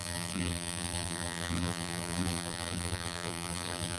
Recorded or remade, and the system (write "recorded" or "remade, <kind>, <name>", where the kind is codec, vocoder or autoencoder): remade, vocoder, BigVGAN v2